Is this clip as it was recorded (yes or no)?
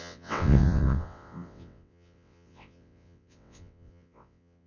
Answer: no